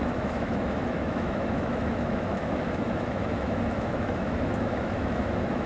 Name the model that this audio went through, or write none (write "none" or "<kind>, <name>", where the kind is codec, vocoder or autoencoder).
autoencoder, DAC-VAE